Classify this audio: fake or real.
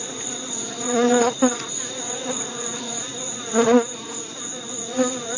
fake